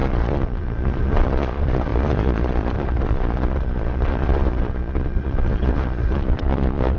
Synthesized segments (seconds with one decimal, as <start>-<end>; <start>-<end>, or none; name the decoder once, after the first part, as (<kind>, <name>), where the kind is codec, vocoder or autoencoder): 0.0-7.0 (vocoder, Vocos)